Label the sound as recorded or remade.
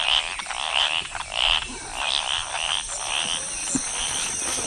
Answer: recorded